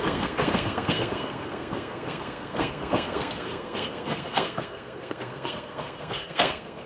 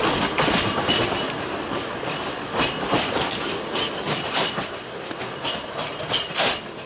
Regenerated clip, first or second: first